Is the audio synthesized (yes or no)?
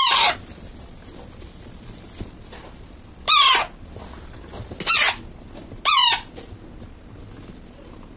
no